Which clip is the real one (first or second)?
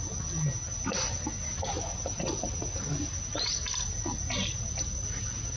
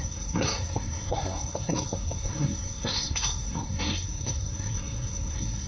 first